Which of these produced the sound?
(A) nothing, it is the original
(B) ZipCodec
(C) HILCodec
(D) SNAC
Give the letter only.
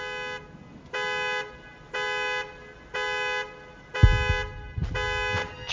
A